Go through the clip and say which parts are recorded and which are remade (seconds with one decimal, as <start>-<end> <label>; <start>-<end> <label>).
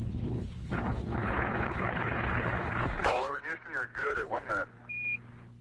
0.0-3.4 remade; 3.4-4.0 recorded; 4.0-4.5 remade; 4.5-5.6 recorded